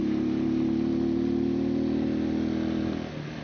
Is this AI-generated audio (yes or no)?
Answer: no